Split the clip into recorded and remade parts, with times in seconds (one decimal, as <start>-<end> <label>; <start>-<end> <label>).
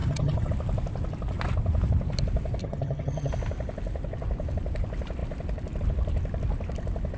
0.0-0.5 remade; 0.5-2.6 recorded; 2.6-3.3 remade; 3.3-7.2 recorded